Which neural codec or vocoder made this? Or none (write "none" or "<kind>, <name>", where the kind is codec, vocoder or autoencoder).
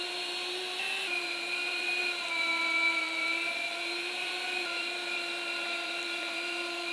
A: vocoder, BigVGAN v2